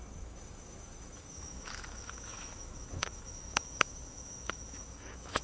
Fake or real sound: fake